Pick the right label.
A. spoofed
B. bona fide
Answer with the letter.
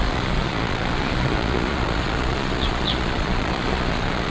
A